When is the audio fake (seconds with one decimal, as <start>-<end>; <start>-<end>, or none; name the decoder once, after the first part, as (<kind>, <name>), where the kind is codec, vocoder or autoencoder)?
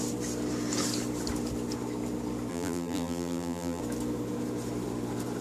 2.5-3.8 (vocoder, BigVGAN v2)